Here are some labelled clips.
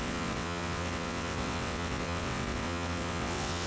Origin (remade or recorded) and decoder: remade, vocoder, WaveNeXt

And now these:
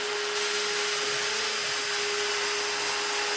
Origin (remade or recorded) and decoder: recorded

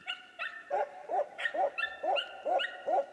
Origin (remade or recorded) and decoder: remade, vocoder, BigVGAN v2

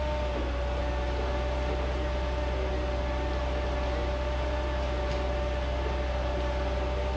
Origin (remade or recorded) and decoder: recorded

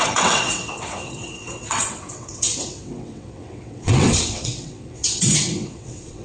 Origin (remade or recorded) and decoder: remade, vocoder, WaveNeXt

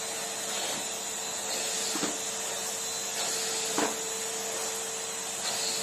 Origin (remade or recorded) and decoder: recorded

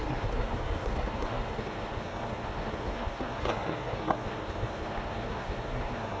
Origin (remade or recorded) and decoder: remade, codec, SNAC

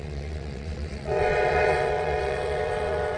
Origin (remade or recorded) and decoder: remade, vocoder, WaveNeXt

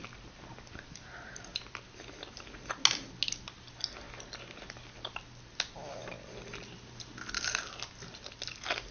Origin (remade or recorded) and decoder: recorded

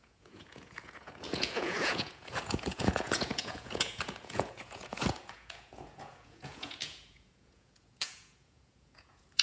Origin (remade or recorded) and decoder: remade, vocoder, Vocos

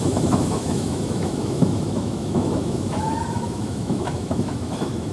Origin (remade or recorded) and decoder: remade, autoencoder, DAC-VAE